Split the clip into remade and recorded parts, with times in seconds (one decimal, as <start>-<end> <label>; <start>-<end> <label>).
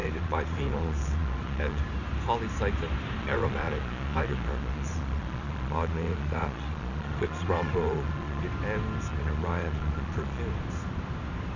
0.0-1.8 remade; 1.8-3.2 recorded; 3.2-8.4 remade; 8.4-9.1 recorded; 9.1-10.4 remade; 10.4-11.6 recorded